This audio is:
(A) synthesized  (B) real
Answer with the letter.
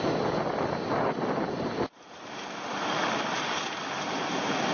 B